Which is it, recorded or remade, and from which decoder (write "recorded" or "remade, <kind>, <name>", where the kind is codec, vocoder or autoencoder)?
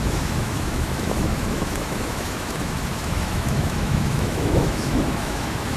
remade, autoencoder, DAC-VAE